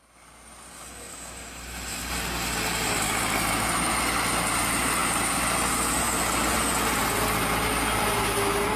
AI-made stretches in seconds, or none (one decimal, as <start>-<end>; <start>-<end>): none